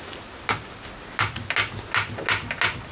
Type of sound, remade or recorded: recorded